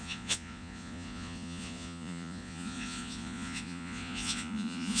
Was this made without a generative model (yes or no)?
no